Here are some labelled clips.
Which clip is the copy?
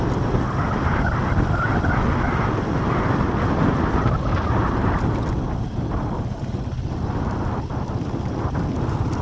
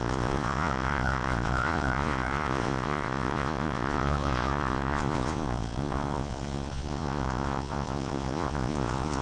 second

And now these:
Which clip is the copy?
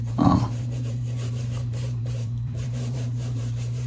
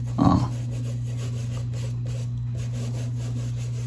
first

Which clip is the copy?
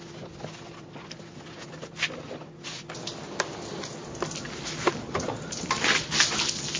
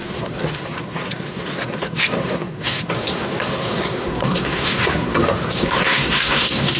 second